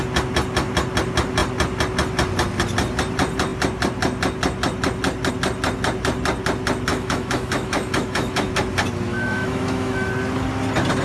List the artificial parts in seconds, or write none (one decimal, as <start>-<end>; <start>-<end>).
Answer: 6.9-8.5; 9.1-10.1